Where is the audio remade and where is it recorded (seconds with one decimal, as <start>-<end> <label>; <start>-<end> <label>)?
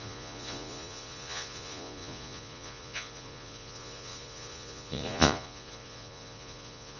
0.0-7.0 remade